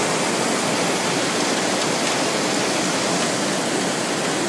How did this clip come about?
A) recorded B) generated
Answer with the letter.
A